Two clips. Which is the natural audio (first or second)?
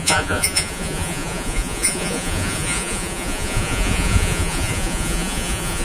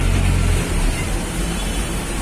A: second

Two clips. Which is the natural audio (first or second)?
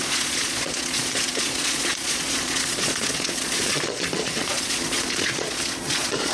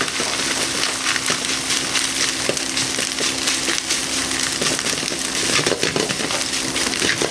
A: second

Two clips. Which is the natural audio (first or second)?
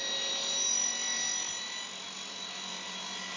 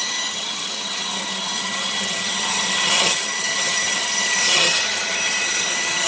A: first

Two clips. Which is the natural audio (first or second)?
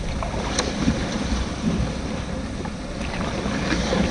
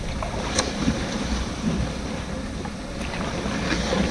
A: second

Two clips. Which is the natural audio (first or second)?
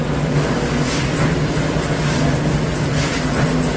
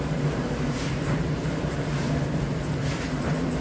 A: first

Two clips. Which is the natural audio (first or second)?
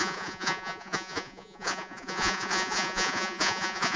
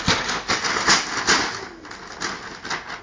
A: second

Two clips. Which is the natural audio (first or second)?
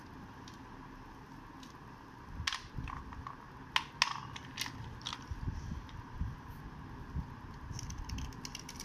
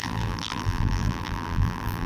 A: first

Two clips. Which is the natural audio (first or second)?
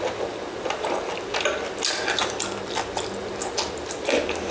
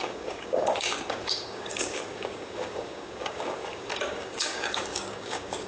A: first